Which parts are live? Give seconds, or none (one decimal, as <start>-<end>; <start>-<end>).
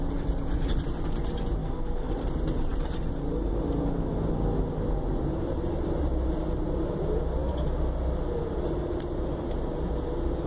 0.0-1.6; 2.1-10.5